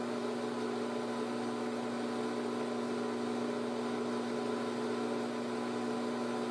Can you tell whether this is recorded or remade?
recorded